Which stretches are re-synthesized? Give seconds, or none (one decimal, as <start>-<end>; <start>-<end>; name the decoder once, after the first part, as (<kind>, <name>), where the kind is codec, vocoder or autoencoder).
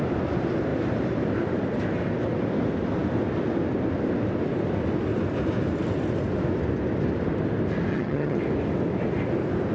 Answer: 7.9-8.4 (vocoder, HiFi-GAN)